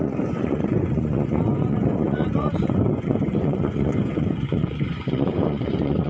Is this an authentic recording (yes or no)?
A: no